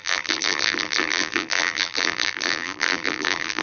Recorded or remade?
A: remade